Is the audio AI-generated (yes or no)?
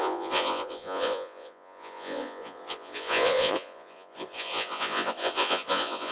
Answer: yes